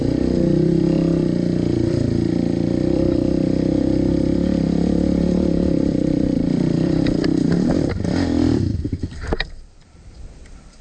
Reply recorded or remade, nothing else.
remade